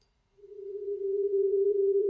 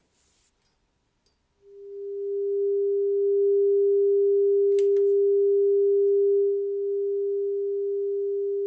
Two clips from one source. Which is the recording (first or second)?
second